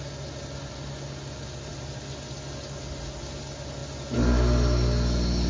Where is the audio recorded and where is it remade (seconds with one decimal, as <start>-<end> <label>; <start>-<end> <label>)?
0.0-5.5 recorded